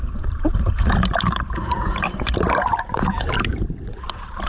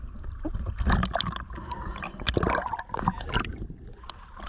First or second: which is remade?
first